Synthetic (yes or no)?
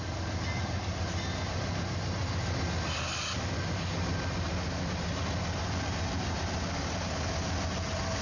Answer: no